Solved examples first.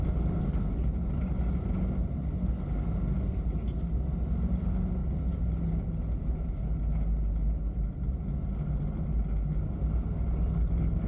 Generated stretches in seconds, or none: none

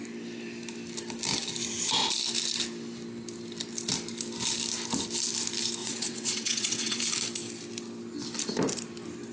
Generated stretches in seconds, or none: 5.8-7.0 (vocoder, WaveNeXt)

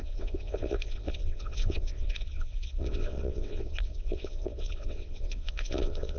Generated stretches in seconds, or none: 0.0-6.2 (vocoder, WaveNeXt)

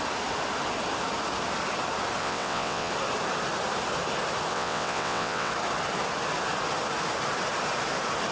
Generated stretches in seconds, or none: 2.2-2.9 (vocoder, WaveNeXt); 4.5-5.5

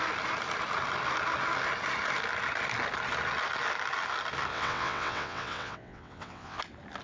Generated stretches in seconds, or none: 4.5-6.6 (vocoder, WaveNeXt)

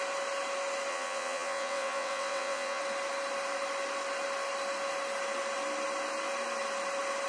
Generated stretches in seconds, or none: 0.9-2.8 (vocoder, WaveNeXt)

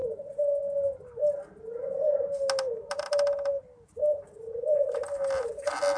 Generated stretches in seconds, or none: none

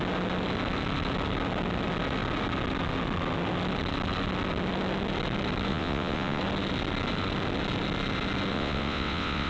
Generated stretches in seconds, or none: 5.7-6.4 (vocoder, WaveNeXt); 8.5-9.5